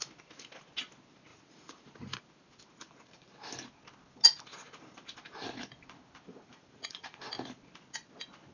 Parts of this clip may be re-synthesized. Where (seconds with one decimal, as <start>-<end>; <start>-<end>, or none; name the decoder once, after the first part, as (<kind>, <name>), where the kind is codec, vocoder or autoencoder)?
1.3-2.2 (vocoder, Vocos); 6.3-7.2